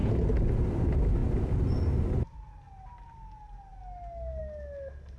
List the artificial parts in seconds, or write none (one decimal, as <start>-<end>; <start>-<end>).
none